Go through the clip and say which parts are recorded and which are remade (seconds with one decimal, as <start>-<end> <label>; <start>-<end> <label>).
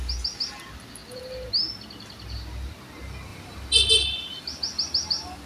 0.0-5.5 recorded